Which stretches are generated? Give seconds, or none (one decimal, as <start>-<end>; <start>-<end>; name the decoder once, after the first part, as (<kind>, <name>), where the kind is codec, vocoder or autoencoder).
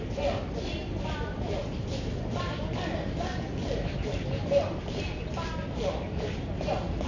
none